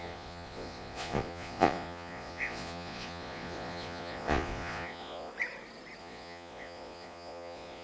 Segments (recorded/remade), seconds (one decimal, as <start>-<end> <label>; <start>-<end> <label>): 0.0-5.3 remade; 5.3-6.0 recorded; 6.0-7.8 remade